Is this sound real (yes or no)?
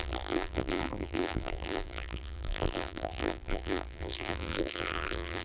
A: no